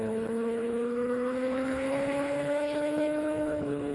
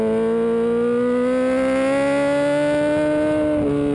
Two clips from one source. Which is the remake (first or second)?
first